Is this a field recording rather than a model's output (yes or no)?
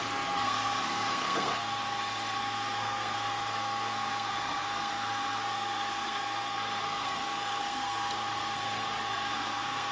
no